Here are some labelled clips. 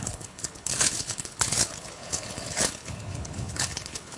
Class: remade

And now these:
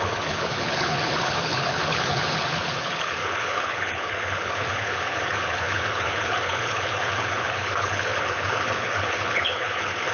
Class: remade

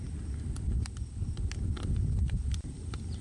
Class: recorded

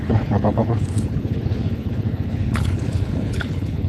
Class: remade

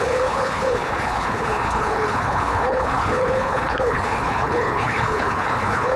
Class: remade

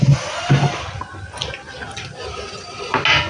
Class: recorded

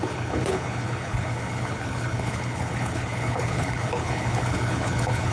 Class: remade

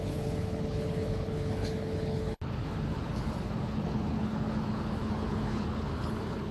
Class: remade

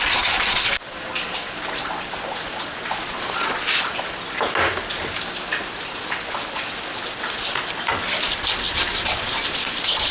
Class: recorded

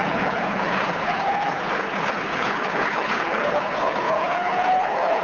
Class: remade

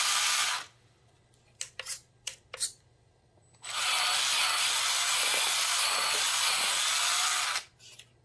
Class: recorded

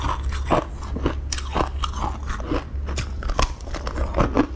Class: recorded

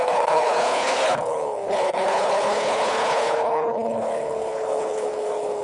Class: remade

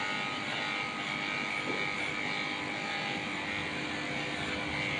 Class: recorded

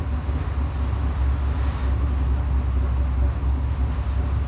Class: recorded